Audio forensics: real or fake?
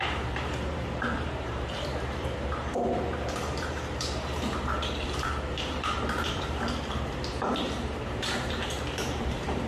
fake